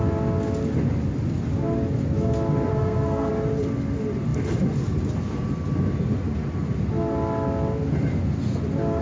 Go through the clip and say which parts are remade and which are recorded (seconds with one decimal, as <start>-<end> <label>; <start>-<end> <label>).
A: 0.0-2.7 recorded; 2.7-3.3 remade; 3.3-9.0 recorded